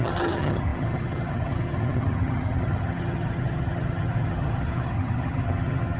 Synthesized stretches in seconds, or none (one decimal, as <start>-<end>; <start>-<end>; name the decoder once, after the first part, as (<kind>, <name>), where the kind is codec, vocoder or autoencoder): 0.0-6.0 (vocoder, HiFi-GAN)